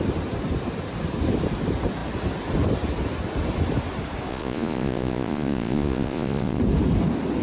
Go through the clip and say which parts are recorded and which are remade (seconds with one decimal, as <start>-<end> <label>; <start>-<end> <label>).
0.0-4.3 recorded; 4.3-6.6 remade; 6.6-7.4 recorded